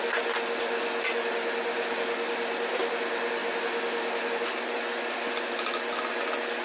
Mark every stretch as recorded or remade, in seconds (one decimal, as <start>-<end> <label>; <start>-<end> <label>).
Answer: 0.0-6.6 recorded